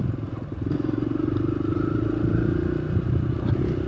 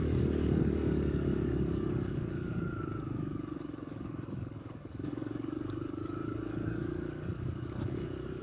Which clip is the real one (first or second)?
first